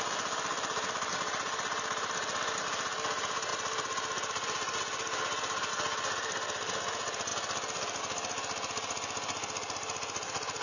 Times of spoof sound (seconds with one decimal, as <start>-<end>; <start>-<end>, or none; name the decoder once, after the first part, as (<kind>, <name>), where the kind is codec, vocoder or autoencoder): none